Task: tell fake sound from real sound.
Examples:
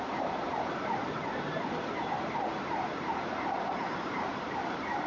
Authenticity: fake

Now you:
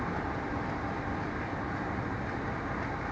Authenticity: real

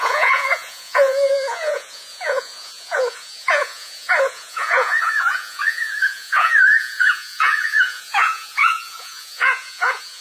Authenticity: fake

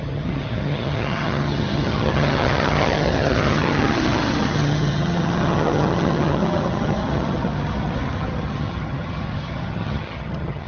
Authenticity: fake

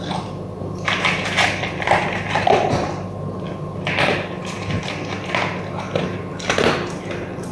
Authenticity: real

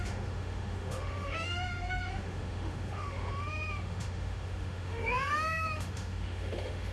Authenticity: fake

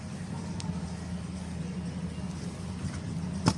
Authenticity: real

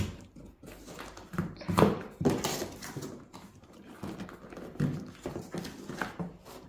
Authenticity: real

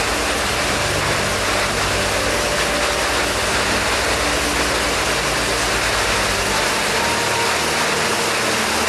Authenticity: real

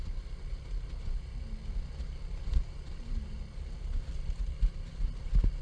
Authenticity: real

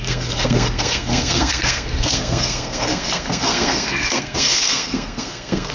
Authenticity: fake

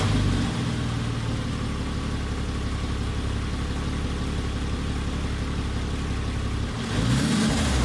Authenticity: real